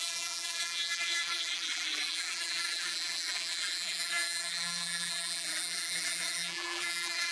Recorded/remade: remade